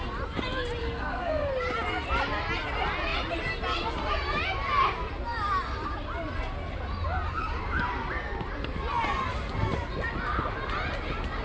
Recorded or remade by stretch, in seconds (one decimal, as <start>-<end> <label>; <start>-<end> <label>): 0.0-0.8 recorded; 0.8-1.5 remade; 1.5-11.4 recorded